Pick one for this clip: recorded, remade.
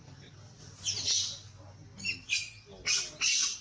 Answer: recorded